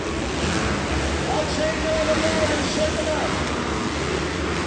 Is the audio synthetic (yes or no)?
no